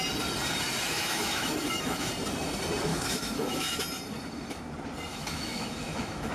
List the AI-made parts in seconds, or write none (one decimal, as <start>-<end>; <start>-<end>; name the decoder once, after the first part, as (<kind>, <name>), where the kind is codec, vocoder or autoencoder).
0.9-2.1 (autoencoder, DAC-VAE); 2.9-3.8; 5.1-6.3